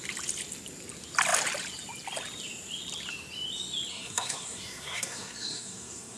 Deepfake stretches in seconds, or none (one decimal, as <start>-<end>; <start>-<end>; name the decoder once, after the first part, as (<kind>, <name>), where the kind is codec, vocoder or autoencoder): 3.9-6.2 (codec, SNAC)